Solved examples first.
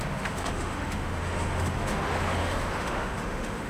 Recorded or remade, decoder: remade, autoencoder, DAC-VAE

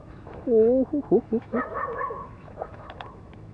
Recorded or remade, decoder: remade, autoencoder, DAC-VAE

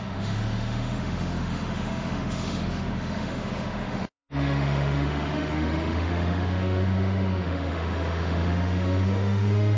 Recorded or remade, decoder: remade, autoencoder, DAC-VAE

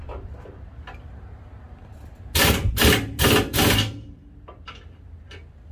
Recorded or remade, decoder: recorded